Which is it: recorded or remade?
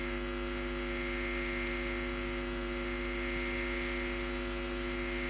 recorded